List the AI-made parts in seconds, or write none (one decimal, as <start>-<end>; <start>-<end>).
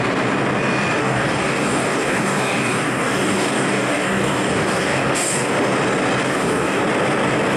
1.0-5.5; 6.2-6.8